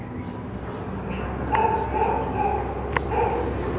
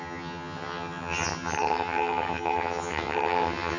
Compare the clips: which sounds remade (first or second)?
second